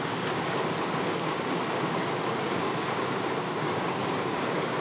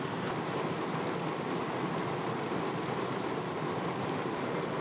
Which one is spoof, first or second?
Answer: first